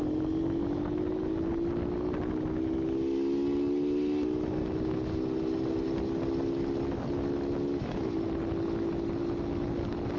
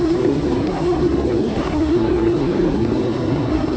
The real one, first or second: first